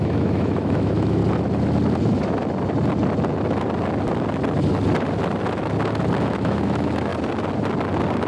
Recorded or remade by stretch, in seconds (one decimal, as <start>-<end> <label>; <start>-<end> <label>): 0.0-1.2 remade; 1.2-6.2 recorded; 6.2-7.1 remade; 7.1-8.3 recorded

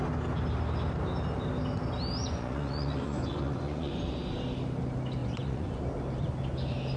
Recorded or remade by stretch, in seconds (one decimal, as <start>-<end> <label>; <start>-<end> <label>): 0.0-2.2 recorded; 2.2-3.9 remade; 3.9-5.2 recorded; 5.2-5.8 remade; 5.8-7.0 recorded

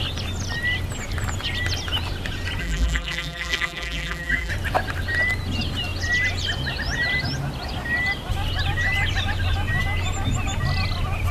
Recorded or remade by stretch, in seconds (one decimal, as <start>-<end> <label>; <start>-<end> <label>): 0.0-2.6 recorded; 2.6-4.5 remade; 4.5-11.3 recorded

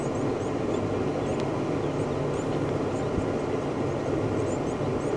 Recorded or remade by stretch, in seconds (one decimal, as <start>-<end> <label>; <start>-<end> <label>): 0.0-5.2 recorded

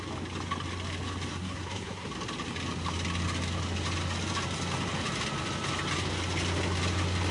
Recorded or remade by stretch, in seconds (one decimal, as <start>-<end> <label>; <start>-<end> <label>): 0.0-1.3 recorded; 1.3-2.1 remade; 2.1-7.3 recorded